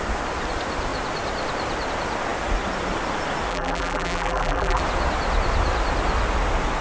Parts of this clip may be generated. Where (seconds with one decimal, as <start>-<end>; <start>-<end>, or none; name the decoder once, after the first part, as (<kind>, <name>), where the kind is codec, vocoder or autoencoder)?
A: 3.5-4.8 (vocoder, BigVGAN v2)